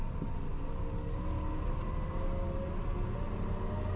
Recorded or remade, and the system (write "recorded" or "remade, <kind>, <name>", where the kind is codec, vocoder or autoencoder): recorded